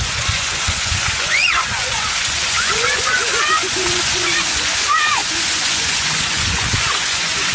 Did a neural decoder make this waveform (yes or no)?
yes